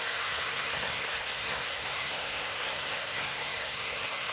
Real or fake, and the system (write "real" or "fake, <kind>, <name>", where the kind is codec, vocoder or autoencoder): fake, codec, SNAC